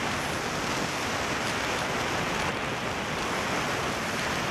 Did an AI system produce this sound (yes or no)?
no